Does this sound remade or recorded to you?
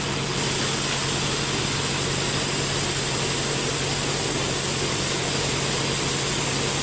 recorded